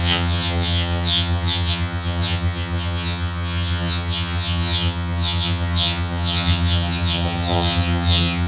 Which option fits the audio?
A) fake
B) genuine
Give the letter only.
A